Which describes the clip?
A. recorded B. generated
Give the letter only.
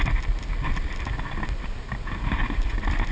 A